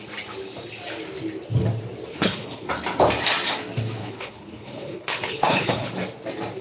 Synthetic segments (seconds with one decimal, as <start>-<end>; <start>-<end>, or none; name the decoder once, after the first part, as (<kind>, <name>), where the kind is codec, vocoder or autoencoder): 2.1-2.7 (codec, HILCodec); 4.0-5.9